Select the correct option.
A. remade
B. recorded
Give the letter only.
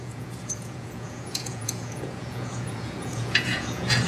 A